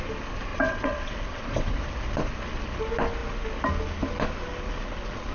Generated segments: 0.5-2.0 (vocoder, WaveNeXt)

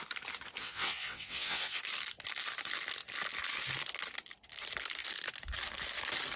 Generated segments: 0.6-1.8 (vocoder, WaveNeXt)

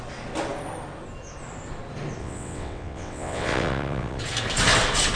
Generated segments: 2.2-4.2 (vocoder, WaveNeXt)

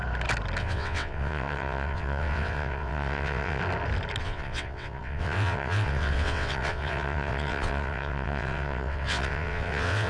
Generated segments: 0.6-3.6 (vocoder, WaveNeXt); 4.2-10.1

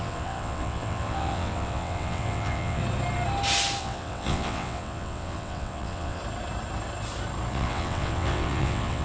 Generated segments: 0.0-2.8 (vocoder, WaveNeXt); 3.8-6.2; 7.5-9.0

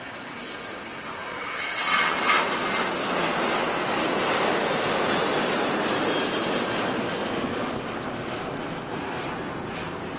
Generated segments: 1.3-2.4 (vocoder, WaveNeXt)

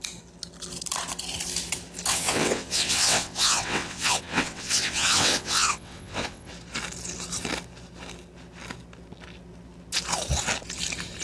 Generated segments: 2.1-6.5 (vocoder, WaveNeXt)

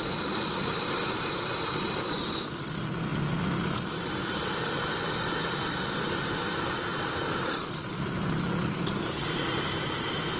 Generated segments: none